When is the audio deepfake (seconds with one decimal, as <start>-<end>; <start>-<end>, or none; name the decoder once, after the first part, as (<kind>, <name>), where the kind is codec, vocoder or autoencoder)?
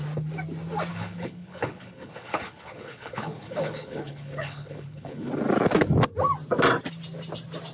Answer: 0.9-5.3 (codec, HILCodec)